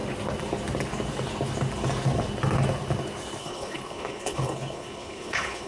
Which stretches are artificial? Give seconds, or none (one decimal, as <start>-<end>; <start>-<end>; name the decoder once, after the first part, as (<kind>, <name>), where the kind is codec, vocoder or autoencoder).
3.4-5.7 (codec, HILCodec)